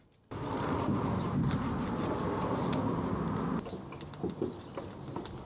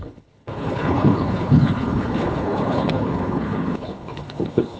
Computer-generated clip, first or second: second